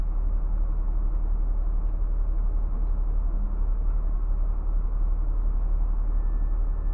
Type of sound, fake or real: real